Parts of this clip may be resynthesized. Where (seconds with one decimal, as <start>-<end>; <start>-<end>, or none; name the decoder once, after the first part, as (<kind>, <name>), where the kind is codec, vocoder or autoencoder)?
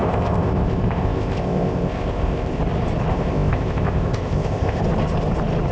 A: 0.0-2.6 (codec, ZipCodec); 3.1-4.8